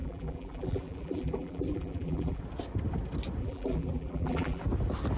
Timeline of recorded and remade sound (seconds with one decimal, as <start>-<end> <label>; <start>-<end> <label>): 0.0-2.4 remade; 2.4-3.4 recorded; 3.4-4.6 remade; 4.6-5.2 recorded

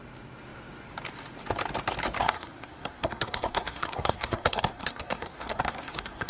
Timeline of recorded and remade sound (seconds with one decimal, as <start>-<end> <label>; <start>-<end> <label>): 0.0-2.2 recorded; 2.2-6.3 remade

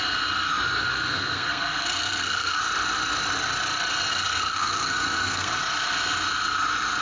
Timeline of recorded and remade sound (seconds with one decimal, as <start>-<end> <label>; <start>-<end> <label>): 0.0-0.9 recorded; 0.9-2.6 remade; 2.6-4.1 recorded; 4.1-5.5 remade; 5.5-7.0 recorded